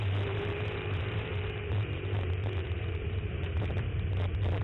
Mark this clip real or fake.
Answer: fake